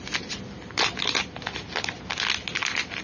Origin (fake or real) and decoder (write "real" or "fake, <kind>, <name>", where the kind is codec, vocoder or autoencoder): real